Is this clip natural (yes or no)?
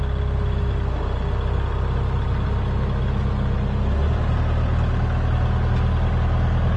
yes